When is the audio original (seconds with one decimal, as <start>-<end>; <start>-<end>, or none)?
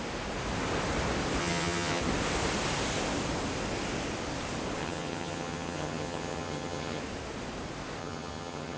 0.0-1.4; 2.0-4.8; 7.0-8.0